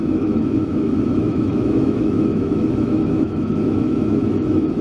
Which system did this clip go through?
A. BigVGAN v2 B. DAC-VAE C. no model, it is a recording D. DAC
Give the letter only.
B